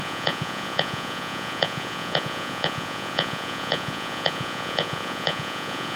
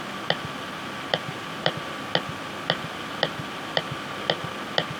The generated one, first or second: first